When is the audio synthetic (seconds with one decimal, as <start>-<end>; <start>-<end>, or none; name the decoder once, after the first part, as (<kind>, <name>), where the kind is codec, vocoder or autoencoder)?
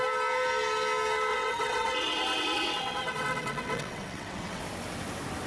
1.3-4.6 (vocoder, WaveNeXt)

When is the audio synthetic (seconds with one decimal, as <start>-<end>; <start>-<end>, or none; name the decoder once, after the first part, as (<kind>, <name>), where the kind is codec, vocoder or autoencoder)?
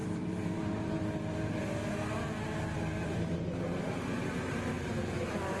0.0-1.6 (vocoder, BigVGAN v2); 3.0-5.6